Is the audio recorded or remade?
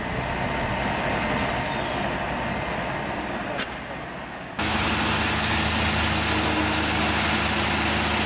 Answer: recorded